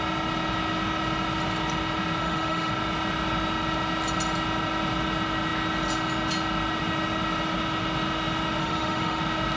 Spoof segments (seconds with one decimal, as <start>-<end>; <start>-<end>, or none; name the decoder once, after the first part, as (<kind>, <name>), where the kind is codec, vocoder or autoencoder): 2.2-2.7 (autoencoder, DAC-VAE); 8.6-9.2